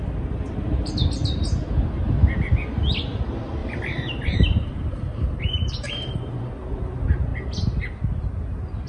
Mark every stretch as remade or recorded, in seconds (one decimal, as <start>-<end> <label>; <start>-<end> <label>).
0.0-3.6 recorded; 3.6-6.4 remade; 6.4-8.9 recorded